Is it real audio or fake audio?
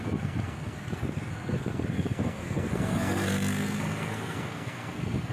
fake